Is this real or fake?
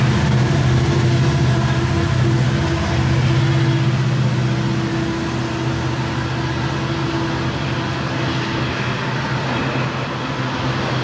real